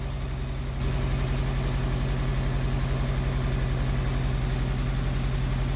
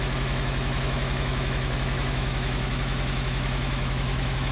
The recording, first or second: first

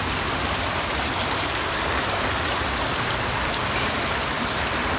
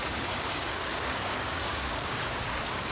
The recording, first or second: first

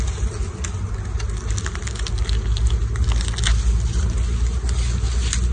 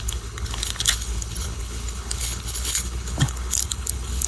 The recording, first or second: first